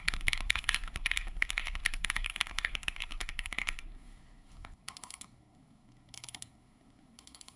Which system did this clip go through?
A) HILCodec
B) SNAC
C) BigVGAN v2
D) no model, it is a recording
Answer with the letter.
B